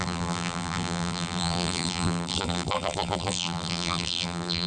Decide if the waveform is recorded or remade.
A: remade